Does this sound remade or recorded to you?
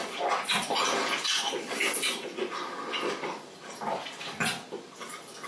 recorded